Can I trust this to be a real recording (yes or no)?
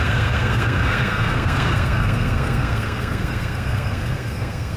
no